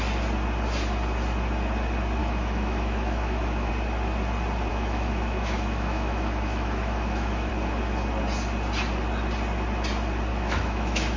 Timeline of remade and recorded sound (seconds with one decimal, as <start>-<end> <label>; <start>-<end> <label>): 0.0-2.2 recorded; 2.2-3.7 remade; 3.7-4.7 recorded; 4.7-7.5 remade; 7.5-10.3 recorded; 10.3-11.2 remade